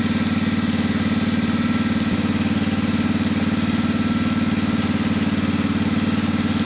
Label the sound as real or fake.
real